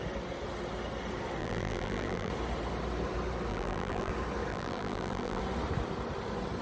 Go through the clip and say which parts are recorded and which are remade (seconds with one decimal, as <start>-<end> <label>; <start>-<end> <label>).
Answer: 0.0-1.4 recorded; 1.4-2.3 remade; 2.3-3.5 recorded; 3.5-4.1 remade; 4.1-4.5 recorded; 4.5-5.4 remade; 5.4-6.6 recorded